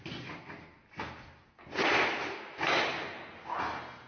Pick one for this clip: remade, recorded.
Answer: recorded